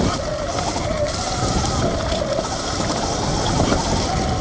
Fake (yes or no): no